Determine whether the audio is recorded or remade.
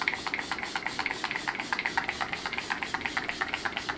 recorded